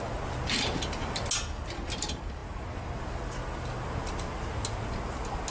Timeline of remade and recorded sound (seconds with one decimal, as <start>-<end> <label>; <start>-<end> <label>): 0.0-5.5 recorded